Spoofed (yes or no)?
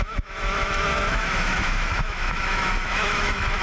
yes